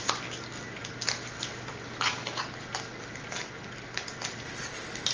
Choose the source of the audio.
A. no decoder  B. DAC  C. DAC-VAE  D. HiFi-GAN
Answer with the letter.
A